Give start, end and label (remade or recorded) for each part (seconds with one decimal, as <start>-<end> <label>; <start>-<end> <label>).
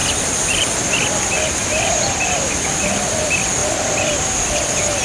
0.0-5.0 recorded